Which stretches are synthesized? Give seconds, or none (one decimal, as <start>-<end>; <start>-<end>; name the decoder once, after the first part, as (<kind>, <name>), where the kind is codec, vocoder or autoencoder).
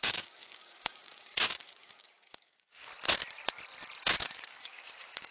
0.0-2.9 (codec, DAC); 4.2-5.3